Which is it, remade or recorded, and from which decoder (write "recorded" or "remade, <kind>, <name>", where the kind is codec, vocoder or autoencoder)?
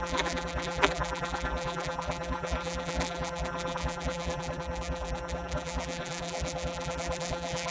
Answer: remade, vocoder, BigVGAN v2